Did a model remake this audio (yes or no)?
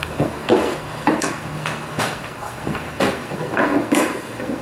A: yes